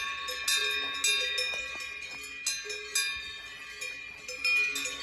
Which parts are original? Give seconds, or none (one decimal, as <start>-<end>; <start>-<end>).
0.0-5.0